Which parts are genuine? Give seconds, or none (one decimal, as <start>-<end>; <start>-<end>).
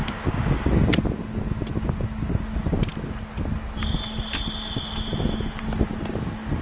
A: 0.7-6.6